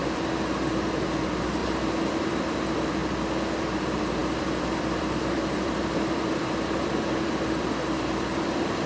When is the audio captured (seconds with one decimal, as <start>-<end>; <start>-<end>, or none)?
1.6-2.2; 3.0-3.6